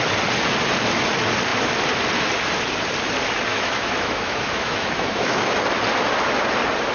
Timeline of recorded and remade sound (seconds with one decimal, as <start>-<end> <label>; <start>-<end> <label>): 0.0-3.5 recorded; 3.5-5.6 remade; 5.6-6.9 recorded